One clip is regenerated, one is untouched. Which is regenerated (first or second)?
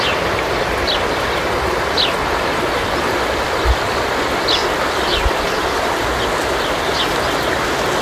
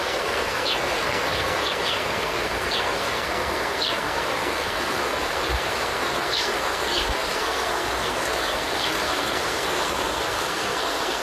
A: second